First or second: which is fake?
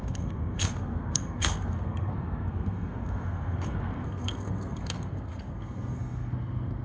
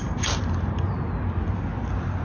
first